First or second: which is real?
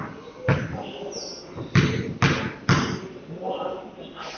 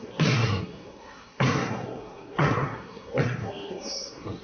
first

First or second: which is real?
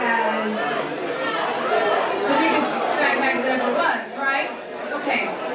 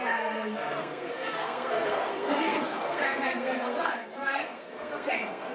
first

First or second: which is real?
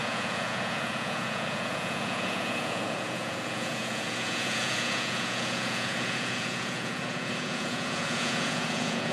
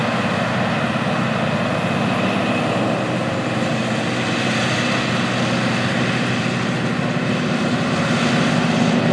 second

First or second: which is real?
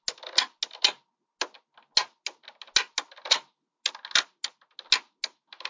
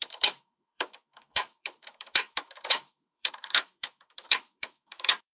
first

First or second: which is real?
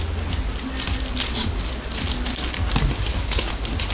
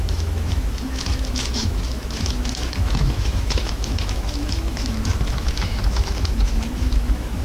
first